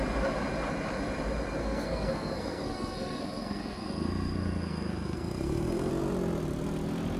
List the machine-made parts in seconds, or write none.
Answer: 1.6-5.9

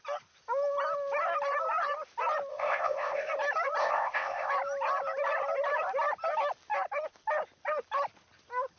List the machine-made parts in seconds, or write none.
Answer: 2.5-3.3; 3.8-4.5

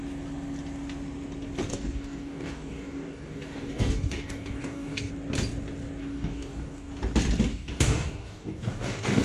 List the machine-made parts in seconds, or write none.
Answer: 1.7-5.1; 6.0-6.9; 7.5-9.2

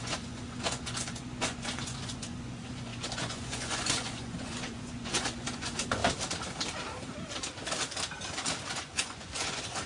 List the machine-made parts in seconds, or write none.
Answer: 0.0-6.0; 8.7-9.9